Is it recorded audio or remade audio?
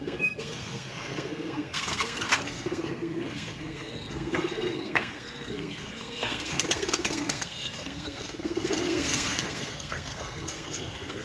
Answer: remade